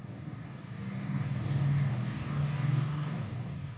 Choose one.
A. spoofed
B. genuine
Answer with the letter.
A